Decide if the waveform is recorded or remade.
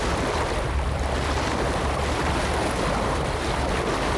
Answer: recorded